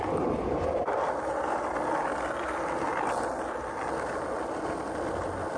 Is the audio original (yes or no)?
yes